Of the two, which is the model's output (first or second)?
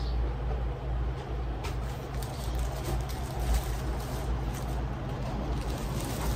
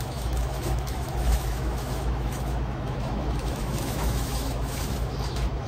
second